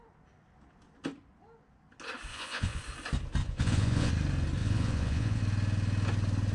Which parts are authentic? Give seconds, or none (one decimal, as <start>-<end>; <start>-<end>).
0.0-2.3; 2.8-3.4; 4.1-4.6; 5.4-6.5